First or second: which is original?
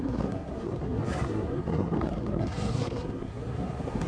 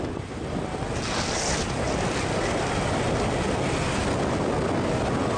second